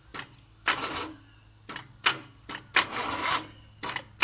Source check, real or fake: real